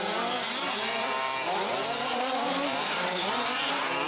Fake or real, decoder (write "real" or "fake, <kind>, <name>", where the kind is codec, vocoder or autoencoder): fake, vocoder, BigVGAN v2